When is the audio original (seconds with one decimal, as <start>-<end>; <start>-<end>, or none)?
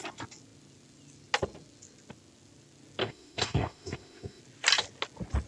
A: 0.0-3.0; 4.4-5.5